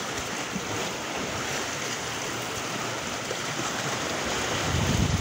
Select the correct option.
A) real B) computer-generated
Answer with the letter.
B